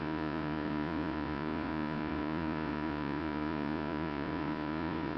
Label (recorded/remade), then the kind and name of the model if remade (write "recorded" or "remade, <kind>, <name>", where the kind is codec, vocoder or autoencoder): remade, vocoder, Vocos